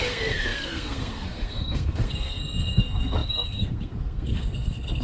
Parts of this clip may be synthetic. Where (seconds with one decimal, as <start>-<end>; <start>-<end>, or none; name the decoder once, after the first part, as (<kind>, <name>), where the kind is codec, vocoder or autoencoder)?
0.0-5.0 (codec, SNAC)